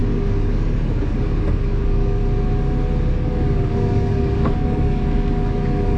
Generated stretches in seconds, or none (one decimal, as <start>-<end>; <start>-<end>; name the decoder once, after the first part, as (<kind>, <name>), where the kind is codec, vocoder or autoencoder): 0.0-2.2 (codec, DAC); 3.1-6.0